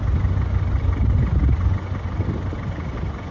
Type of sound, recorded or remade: recorded